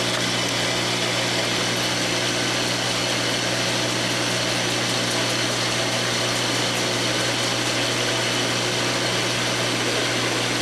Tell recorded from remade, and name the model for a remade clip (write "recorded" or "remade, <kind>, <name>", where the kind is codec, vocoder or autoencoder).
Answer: recorded